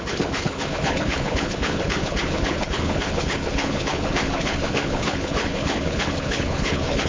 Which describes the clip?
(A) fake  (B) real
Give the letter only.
A